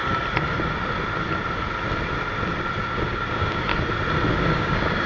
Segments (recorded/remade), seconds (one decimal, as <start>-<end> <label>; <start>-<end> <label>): 0.0-3.1 recorded; 3.1-3.7 remade; 3.7-4.3 recorded; 4.3-5.1 remade